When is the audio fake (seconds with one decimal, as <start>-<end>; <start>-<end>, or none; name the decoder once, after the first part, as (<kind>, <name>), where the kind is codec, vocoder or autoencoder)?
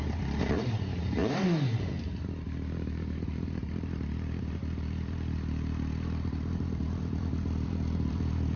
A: 0.0-8.6 (vocoder, BigVGAN v2)